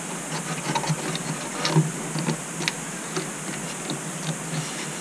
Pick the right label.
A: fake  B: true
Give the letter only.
B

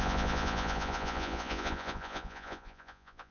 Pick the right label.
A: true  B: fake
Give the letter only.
B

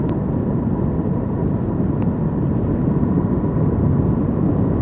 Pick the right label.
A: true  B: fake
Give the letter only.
A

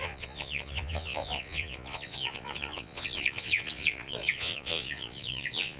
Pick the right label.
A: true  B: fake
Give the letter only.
B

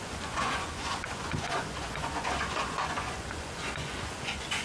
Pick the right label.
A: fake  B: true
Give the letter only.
A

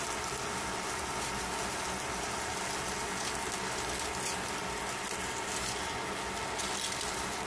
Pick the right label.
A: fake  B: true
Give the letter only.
B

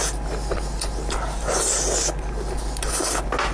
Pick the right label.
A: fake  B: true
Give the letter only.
B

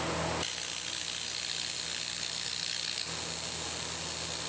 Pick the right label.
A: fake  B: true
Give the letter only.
B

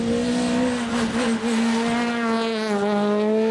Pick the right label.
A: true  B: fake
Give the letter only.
A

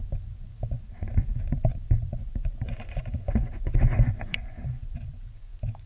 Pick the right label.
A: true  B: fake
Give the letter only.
B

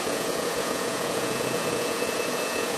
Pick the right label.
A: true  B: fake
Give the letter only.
B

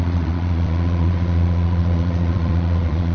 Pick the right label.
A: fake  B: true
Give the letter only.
A